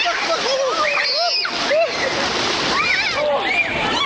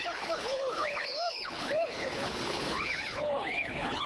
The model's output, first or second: second